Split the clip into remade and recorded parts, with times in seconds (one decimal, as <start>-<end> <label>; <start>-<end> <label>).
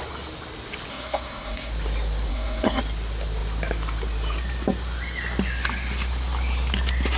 0.0-0.9 recorded; 0.9-1.7 remade; 1.7-2.3 recorded; 2.3-2.8 remade; 2.8-7.2 recorded